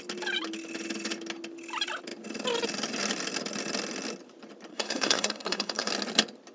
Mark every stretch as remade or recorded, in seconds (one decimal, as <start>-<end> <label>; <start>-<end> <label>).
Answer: 0.0-4.7 recorded; 4.7-5.9 remade; 5.9-6.5 recorded